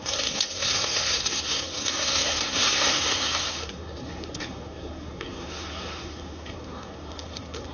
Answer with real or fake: fake